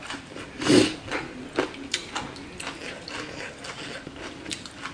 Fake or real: real